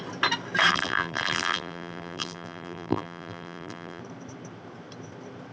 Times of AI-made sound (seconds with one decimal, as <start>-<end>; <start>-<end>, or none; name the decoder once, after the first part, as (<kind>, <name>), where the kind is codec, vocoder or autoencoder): 0.7-4.0 (vocoder, BigVGAN v2)